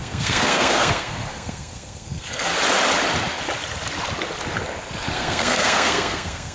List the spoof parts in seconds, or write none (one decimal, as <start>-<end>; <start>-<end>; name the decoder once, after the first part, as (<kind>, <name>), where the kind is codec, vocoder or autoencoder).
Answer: 0.0-2.5 (codec, SNAC); 5.1-6.5